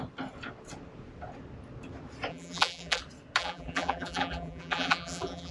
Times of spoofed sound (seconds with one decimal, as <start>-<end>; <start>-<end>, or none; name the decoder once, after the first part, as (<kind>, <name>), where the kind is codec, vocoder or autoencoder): 2.3-3.0 (vocoder, BigVGAN v2); 3.4-5.5